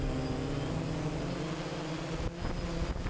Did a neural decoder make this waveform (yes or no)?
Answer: no